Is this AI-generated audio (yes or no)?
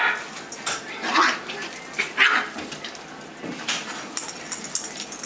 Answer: no